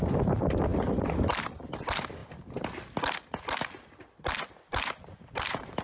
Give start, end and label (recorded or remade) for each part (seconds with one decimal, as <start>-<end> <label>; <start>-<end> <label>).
0.0-5.8 recorded